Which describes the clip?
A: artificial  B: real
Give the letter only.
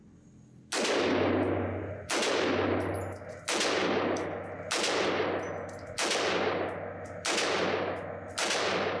B